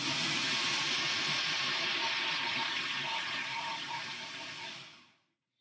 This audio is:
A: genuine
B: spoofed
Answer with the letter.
B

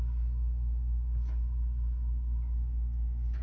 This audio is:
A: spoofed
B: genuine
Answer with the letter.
B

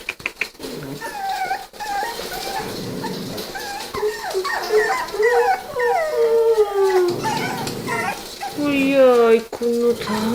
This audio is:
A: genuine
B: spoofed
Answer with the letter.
A